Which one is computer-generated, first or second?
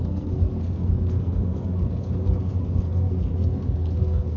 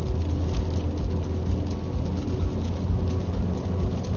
first